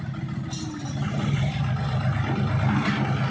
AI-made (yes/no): no